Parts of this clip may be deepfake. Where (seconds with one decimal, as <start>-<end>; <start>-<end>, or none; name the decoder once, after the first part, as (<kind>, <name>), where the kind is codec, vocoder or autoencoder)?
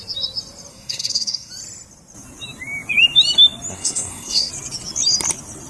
0.7-1.5 (codec, SNAC); 3.7-4.5